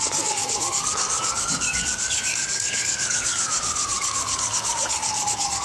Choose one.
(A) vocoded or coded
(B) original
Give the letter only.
A